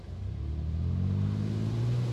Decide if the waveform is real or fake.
real